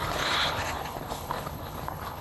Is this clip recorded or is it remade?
remade